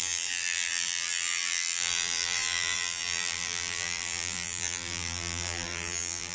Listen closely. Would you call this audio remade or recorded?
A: remade